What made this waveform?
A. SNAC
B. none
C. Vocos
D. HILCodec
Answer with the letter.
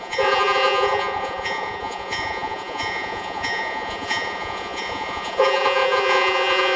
C